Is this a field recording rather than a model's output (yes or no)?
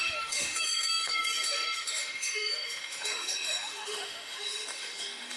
no